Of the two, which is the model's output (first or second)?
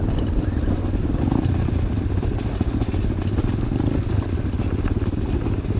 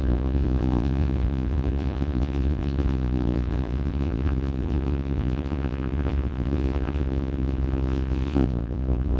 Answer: second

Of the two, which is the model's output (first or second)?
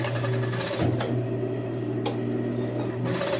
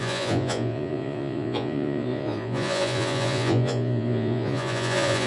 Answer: second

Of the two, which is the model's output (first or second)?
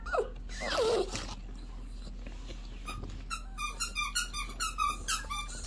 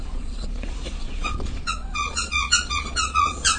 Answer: second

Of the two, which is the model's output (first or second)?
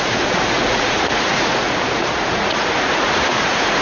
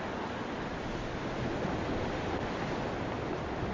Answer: first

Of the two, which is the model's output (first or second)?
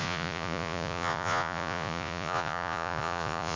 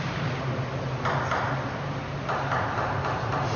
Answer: first